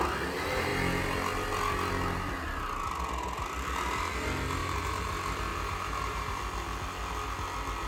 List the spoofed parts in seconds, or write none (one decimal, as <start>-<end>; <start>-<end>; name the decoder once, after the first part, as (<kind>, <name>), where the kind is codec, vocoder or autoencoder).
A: 4.6-5.1 (vocoder, BigVGAN v2); 5.5-6.4